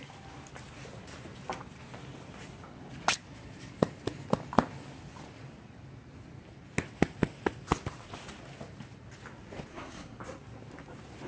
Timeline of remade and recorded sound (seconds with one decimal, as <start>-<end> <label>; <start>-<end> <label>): 0.0-9.7 recorded; 9.7-10.2 remade; 10.2-11.3 recorded